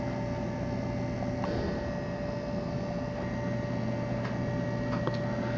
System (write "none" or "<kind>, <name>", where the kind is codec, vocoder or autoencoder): none